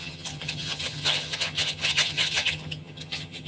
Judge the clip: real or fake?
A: fake